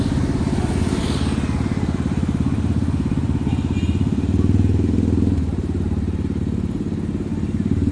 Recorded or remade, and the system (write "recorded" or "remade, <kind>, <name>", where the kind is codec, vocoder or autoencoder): recorded